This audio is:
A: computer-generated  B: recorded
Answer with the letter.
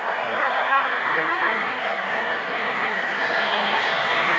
A